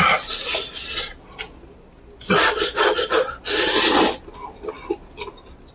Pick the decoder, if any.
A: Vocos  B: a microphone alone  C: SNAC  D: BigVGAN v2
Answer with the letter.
B